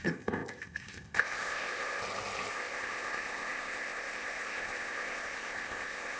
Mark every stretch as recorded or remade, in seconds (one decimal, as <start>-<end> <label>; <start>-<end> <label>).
0.0-2.0 remade; 2.0-2.5 recorded; 2.5-6.2 remade